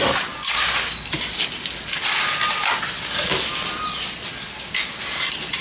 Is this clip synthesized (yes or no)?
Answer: no